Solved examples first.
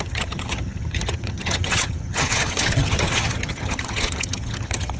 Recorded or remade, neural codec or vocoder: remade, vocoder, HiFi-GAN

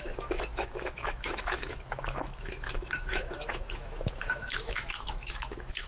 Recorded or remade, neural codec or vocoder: remade, autoencoder, DAC-VAE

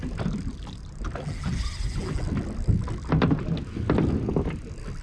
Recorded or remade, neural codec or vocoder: recorded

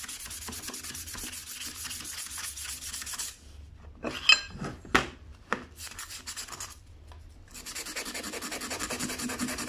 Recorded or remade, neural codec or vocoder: recorded